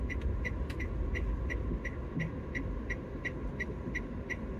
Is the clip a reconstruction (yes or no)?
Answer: no